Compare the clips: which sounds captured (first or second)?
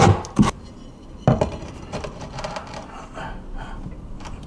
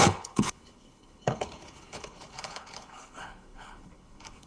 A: first